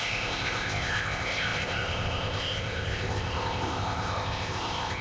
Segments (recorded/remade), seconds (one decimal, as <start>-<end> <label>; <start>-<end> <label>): 0.0-5.0 remade